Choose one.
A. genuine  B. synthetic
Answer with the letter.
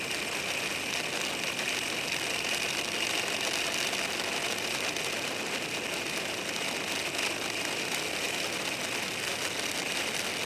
A